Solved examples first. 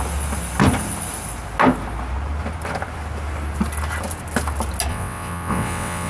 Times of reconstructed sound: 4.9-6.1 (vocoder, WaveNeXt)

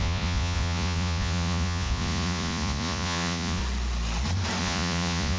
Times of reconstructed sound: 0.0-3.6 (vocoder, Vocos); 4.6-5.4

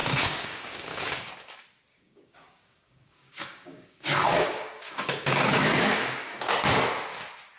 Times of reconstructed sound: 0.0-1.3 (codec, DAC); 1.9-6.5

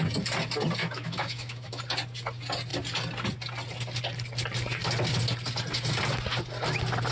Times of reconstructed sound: 0.8-1.8 (autoencoder, DAC-VAE)

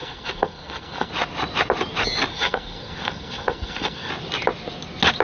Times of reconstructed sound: 0.0-1.1 (codec, SNAC); 2.3-4.1

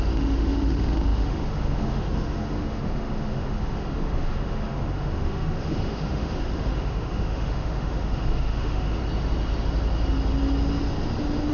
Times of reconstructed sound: 0.0-9.0 (autoencoder, DAC-VAE)